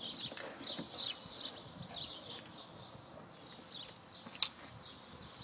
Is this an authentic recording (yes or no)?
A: yes